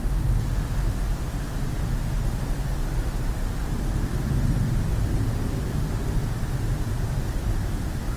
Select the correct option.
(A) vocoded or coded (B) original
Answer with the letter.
B